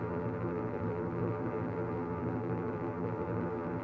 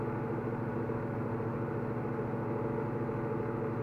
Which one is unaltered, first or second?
second